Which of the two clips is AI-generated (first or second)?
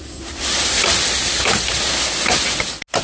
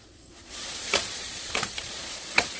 second